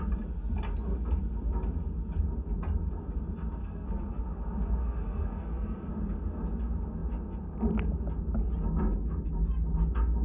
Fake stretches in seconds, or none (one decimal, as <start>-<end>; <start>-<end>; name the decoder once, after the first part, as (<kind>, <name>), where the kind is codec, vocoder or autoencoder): 3.6-4.2 (codec, SNAC); 4.8-5.9